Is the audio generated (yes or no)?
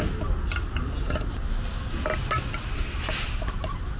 no